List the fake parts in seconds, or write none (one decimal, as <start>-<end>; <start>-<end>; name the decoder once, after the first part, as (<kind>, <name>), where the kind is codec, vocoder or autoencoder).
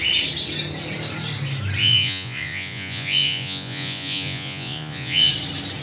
1.8-5.3 (vocoder, Vocos)